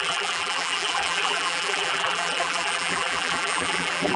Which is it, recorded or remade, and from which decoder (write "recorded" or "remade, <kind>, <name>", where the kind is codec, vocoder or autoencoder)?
remade, vocoder, BigVGAN v2